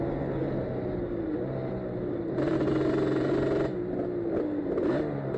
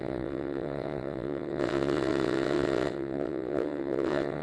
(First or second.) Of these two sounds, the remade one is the second